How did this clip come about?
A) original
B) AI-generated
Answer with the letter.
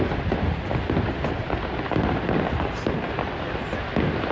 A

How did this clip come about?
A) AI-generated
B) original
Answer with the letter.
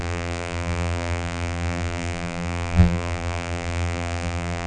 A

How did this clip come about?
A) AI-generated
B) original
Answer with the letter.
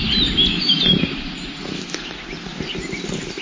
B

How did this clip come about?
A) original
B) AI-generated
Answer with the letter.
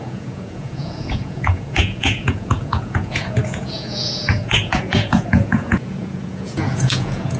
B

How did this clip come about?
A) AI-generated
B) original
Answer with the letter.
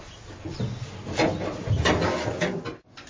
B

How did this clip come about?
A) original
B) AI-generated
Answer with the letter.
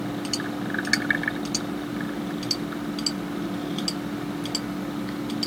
A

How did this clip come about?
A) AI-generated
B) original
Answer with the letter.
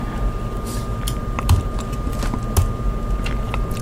B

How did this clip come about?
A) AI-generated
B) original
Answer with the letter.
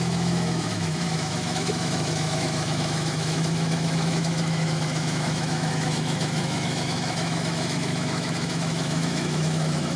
A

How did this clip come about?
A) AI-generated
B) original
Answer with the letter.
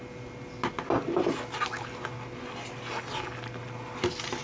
B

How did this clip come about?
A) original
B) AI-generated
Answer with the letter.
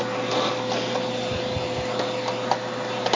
A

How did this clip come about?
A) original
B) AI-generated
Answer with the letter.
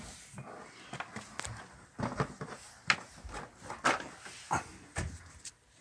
A